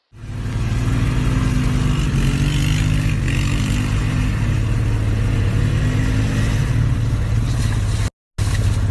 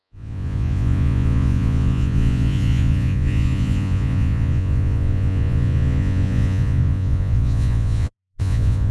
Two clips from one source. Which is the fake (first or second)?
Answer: second